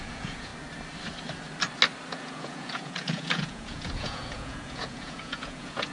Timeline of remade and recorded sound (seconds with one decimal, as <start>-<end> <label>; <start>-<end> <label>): 0.0-0.5 remade; 0.5-2.1 recorded; 2.1-5.9 remade